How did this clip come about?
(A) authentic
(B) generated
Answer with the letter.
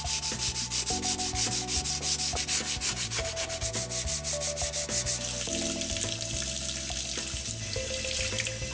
A